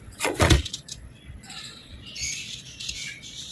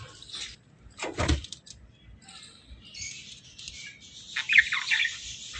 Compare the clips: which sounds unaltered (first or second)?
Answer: second